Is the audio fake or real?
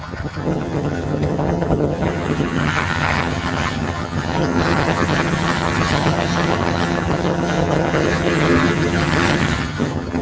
fake